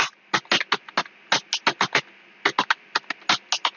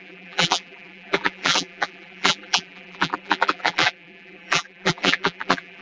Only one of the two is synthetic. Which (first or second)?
second